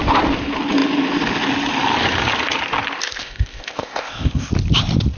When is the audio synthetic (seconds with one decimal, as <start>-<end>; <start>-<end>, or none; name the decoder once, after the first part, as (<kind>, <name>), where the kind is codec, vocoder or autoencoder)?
3.2-4.5 (codec, ZipCodec)